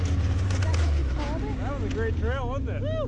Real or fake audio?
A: real